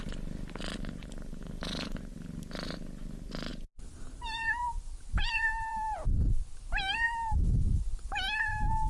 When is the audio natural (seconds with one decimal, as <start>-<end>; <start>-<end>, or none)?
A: 0.0-3.5